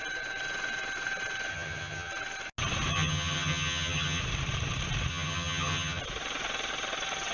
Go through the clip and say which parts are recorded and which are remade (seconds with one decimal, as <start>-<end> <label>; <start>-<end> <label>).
0.0-1.5 recorded; 1.5-2.1 remade; 2.1-2.9 recorded; 2.9-4.2 remade; 4.2-5.1 recorded; 5.1-6.0 remade; 6.0-7.3 recorded